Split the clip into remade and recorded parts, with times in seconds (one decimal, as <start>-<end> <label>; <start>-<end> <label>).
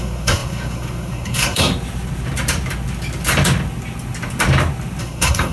0.0-1.7 remade; 1.7-5.0 recorded; 5.0-5.5 remade